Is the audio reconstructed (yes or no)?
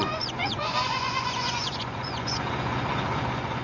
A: yes